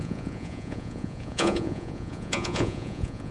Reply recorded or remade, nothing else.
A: remade